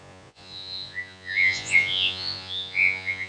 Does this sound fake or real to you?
fake